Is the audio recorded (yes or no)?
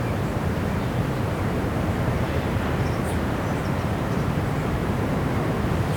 no